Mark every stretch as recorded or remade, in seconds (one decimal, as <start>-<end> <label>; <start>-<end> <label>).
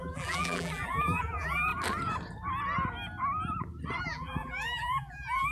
0.0-1.7 remade; 1.7-4.0 recorded; 4.0-5.5 remade